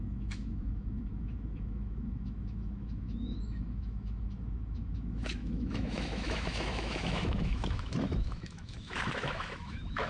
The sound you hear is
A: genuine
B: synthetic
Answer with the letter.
B